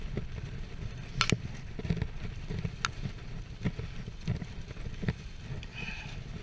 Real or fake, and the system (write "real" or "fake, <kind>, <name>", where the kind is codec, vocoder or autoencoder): real